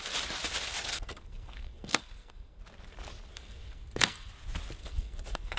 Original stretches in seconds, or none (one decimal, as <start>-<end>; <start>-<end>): 0.0-0.9; 2.6-3.3; 4.3-4.8

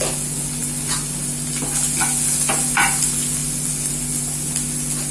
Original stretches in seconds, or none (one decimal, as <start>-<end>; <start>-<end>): 0.0-5.1

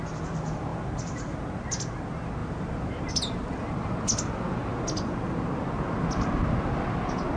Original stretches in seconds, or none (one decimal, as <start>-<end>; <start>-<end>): 0.0-0.7; 1.4-7.4

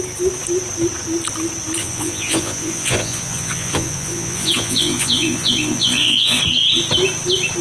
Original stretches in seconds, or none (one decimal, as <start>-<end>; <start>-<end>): 0.0-1.8; 6.4-7.6

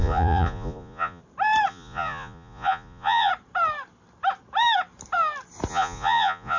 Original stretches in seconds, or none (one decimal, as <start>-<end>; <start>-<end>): 1.2-1.7; 3.3-5.7